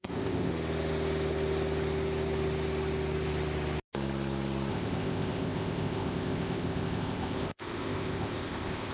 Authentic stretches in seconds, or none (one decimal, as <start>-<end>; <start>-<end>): 0.5-4.7